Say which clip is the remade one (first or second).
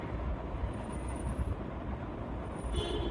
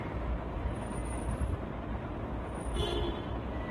first